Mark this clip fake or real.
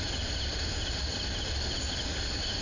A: real